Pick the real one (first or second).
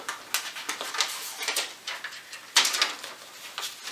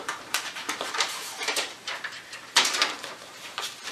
first